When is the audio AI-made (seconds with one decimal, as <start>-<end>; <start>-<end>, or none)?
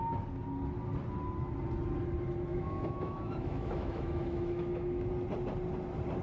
2.5-5.1